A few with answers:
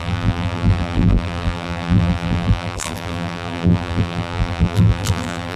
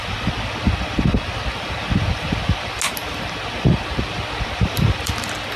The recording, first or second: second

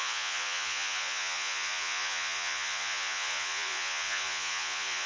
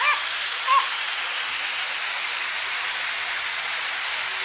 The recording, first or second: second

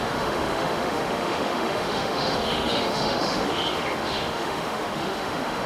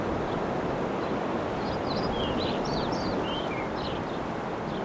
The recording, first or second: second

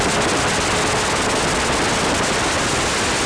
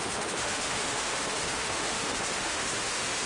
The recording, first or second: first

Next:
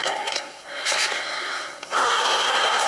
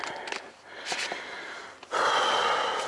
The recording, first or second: second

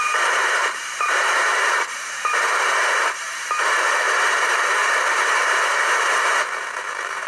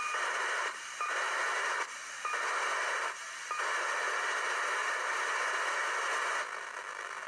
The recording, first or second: second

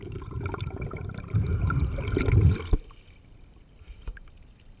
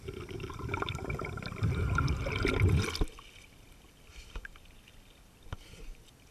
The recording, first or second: second